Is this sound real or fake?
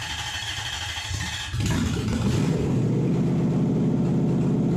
real